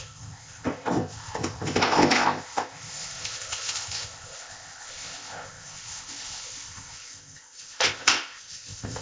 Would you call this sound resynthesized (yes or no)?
yes